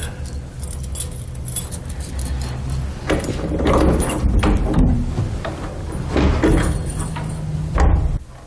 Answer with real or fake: real